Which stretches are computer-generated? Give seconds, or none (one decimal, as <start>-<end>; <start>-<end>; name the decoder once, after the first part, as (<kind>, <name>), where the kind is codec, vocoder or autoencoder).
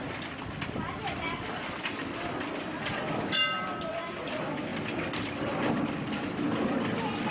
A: none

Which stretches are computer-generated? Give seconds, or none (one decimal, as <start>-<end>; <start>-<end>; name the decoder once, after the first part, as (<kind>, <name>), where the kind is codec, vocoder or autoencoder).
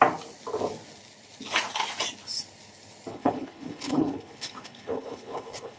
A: 3.1-5.8 (codec, HILCodec)